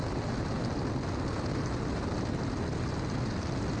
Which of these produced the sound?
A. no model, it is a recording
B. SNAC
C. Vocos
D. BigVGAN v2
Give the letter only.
A